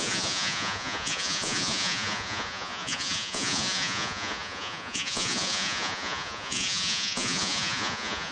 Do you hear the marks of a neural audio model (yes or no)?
yes